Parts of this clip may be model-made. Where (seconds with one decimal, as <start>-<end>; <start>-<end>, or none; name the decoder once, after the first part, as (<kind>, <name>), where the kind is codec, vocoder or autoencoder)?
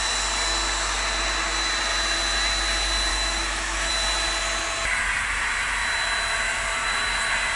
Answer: 3.1-3.9 (autoencoder, DAC-VAE)